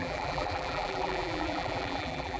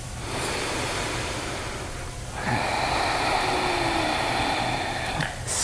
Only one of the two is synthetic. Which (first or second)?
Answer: first